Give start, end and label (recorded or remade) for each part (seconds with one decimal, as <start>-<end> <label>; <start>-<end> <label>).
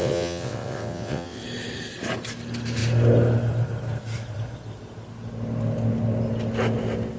0.0-1.4 remade; 1.4-7.2 recorded